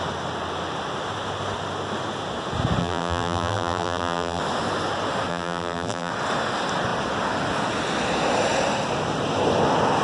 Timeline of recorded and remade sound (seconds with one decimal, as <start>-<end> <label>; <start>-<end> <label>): 0.0-2.8 recorded; 2.8-4.4 remade; 4.4-5.3 recorded; 5.3-6.1 remade; 6.1-10.0 recorded